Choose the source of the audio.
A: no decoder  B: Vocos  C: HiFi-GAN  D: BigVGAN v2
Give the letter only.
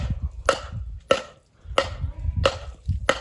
A